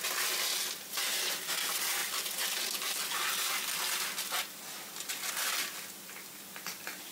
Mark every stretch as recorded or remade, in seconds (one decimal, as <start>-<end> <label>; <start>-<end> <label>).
0.0-7.1 recorded